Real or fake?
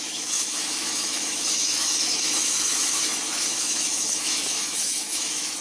fake